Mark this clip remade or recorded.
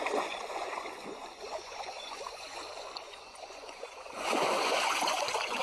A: remade